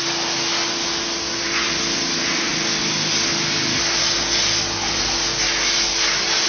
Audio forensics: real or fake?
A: real